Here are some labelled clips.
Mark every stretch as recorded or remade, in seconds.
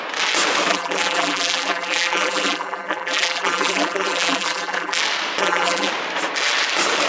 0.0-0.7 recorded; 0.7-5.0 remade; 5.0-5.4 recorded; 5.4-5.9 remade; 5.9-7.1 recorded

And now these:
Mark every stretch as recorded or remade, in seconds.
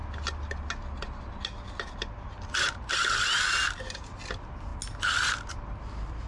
0.0-2.2 recorded; 2.2-3.6 remade; 3.6-4.3 recorded; 4.3-4.7 remade; 4.7-5.5 recorded; 5.5-6.3 remade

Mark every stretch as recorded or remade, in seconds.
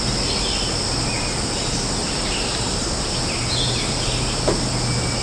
0.0-2.0 recorded; 2.0-3.9 remade; 3.9-5.2 recorded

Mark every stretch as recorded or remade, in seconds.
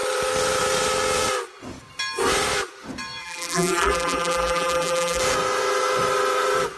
0.0-3.2 recorded; 3.2-5.2 remade; 5.2-6.8 recorded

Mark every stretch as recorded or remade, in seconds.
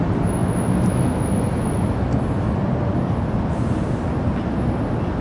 0.0-5.2 recorded